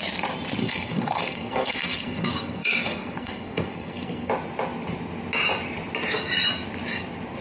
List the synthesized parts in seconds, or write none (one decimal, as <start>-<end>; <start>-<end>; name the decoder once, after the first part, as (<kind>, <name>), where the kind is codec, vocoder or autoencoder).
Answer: 0.6-4.3 (codec, SNAC)